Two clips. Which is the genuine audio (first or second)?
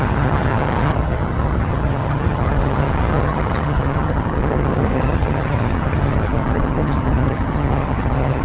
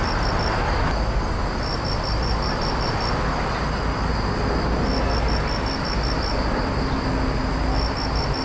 second